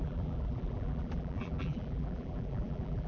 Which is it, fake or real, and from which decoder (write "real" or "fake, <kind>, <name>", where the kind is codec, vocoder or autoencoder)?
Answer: fake, vocoder, BigVGAN v2